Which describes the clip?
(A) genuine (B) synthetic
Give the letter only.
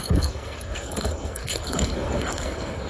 B